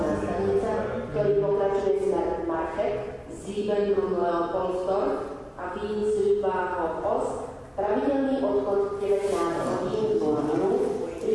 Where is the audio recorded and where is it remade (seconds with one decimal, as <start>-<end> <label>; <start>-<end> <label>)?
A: 0.0-11.3 recorded